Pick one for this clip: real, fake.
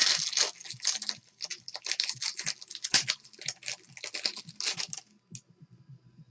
real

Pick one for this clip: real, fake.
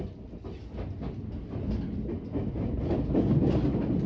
real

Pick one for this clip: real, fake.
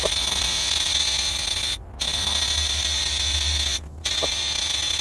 real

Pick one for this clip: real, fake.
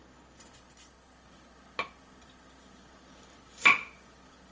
real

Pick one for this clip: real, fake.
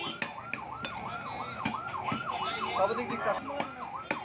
real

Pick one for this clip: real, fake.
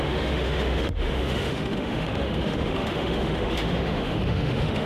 fake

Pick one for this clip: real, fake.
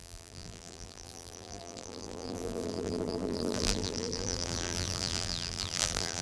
fake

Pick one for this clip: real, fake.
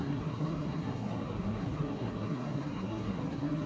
fake